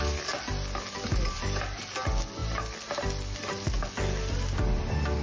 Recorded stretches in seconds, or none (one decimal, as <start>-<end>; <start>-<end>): 0.0-5.2